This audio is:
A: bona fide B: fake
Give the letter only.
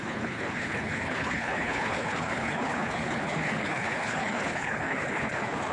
B